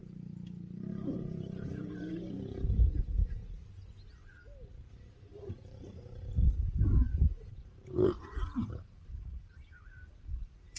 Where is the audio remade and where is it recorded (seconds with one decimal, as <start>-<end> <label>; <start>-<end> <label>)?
0.0-3.4 remade; 3.4-5.5 recorded; 5.5-10.8 remade